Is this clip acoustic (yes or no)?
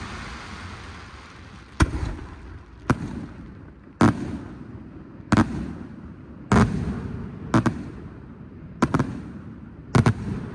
yes